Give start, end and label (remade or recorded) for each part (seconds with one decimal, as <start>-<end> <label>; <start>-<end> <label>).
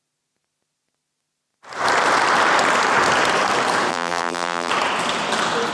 0.0-3.9 recorded; 3.9-4.7 remade; 4.7-5.7 recorded